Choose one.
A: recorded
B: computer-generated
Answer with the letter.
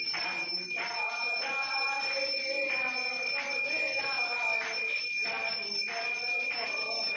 A